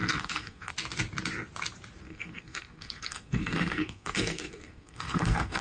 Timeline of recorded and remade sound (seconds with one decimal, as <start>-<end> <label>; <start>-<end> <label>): 0.0-0.7 remade; 0.7-2.0 recorded; 2.0-5.6 remade